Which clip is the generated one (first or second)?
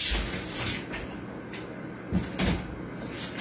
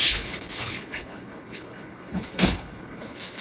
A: second